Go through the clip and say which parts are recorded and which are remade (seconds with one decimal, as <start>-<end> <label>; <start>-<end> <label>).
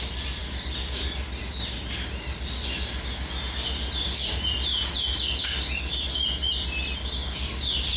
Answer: 0.0-8.0 recorded